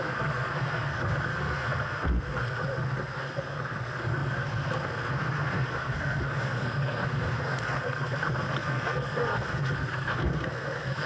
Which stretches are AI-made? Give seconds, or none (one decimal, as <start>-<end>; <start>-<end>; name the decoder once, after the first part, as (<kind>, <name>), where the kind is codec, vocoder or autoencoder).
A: 0.0-11.1 (codec, SNAC)